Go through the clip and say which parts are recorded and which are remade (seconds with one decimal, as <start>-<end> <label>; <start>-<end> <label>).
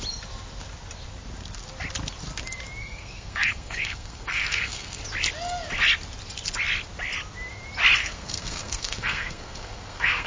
0.0-2.8 recorded; 2.8-5.0 remade; 5.0-8.0 recorded; 8.0-10.3 remade